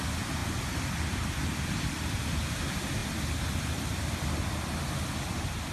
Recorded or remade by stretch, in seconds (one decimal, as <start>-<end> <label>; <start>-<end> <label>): 0.0-5.7 recorded